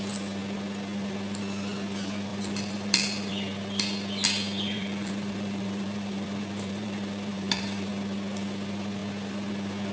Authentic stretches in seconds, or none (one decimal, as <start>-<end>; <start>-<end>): 0.0-2.3; 3.3-4.7; 7.9-9.9

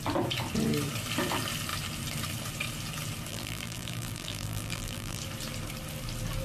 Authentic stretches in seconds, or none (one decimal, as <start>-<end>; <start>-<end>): 0.0-3.3; 5.2-6.4

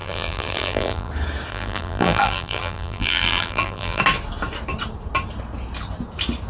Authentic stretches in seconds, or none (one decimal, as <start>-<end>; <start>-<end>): 1.1-1.5; 4.0-6.5

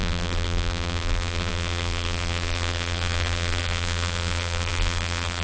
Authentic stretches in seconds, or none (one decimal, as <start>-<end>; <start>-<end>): none

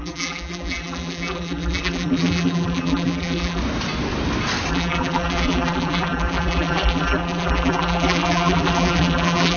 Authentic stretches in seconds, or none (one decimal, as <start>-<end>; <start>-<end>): 3.6-4.7

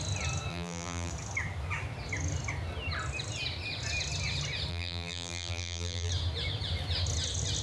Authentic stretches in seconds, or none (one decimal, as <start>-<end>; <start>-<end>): 0.0-0.5; 1.1-4.7; 6.1-7.6